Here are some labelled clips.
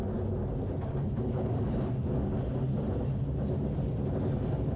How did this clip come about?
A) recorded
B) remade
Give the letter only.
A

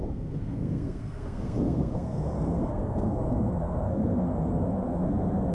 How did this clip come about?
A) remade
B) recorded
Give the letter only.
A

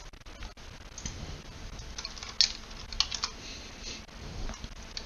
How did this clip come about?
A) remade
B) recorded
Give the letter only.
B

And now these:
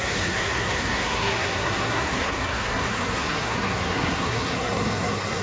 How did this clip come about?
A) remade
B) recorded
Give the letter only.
A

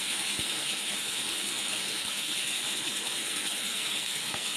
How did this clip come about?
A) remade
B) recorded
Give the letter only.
A